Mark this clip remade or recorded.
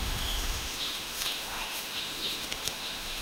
remade